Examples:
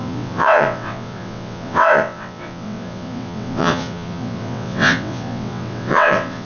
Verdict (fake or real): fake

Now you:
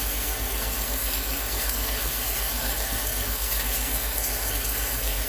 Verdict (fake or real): fake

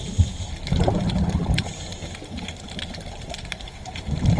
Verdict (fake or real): real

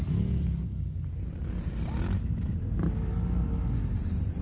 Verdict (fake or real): real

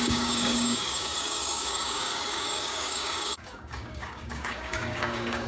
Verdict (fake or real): fake